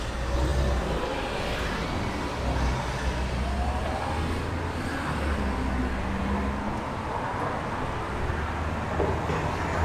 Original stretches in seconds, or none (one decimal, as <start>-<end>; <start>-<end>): 0.0-9.8